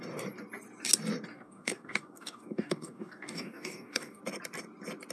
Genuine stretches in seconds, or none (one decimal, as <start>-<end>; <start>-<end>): 0.0-1.3; 4.2-5.1